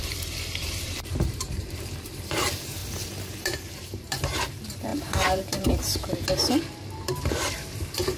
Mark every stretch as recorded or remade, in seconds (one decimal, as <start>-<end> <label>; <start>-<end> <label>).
0.0-2.8 remade; 2.8-3.4 recorded; 3.4-6.0 remade; 6.0-7.0 recorded; 7.0-8.2 remade